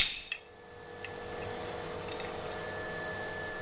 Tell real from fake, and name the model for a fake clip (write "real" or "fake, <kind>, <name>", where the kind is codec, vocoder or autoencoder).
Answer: real